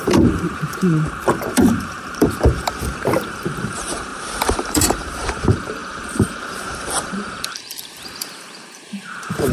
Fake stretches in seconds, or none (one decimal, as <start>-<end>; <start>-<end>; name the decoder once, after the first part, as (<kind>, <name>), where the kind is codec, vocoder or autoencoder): 0.0-9.5 (vocoder, BigVGAN v2)